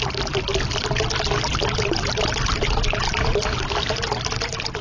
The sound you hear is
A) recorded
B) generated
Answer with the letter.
A